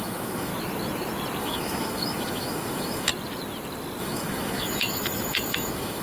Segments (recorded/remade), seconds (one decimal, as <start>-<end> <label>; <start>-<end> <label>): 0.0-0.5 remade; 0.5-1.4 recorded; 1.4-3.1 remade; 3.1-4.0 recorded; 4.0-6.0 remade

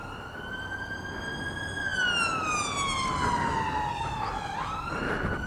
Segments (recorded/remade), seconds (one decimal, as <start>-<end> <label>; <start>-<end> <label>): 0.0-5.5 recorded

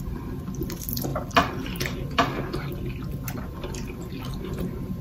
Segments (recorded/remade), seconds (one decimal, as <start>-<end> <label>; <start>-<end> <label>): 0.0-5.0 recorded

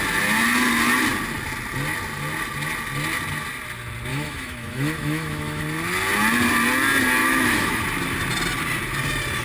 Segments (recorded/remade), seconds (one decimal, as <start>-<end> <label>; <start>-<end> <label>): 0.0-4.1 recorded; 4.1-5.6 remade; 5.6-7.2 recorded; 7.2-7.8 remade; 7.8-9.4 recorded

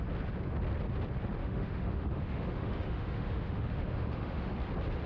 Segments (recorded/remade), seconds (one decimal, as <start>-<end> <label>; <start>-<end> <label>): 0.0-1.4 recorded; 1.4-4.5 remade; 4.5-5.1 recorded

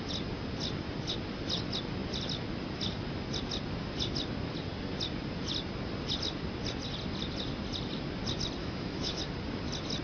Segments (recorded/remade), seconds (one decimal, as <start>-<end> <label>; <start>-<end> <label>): 0.0-8.6 recorded; 8.6-9.2 remade; 9.2-10.0 recorded

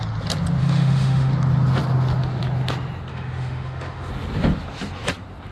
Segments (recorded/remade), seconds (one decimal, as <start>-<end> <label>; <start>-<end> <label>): 0.0-0.6 recorded; 0.6-1.3 remade; 1.3-3.1 recorded; 3.1-4.1 remade; 4.1-5.5 recorded